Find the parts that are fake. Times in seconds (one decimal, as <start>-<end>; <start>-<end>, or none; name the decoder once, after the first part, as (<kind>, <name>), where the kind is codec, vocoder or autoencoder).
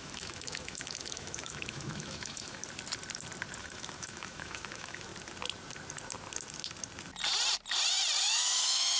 0.0-2.6 (autoencoder, DAC-VAE); 3.6-5.1; 8.2-9.0